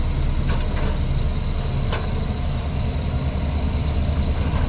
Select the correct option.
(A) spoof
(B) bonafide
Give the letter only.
B